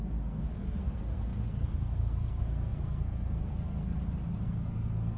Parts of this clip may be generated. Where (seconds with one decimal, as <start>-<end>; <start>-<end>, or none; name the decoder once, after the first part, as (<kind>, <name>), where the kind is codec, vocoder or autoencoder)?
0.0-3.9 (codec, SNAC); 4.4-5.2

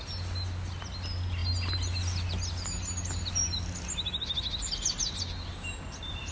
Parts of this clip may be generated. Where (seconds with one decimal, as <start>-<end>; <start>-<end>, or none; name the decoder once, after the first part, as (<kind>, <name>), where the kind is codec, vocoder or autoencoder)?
none

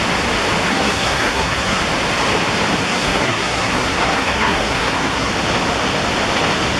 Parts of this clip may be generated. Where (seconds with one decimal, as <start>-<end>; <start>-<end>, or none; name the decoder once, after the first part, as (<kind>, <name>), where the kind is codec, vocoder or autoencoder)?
0.7-1.8 (codec, SNAC); 2.8-5.3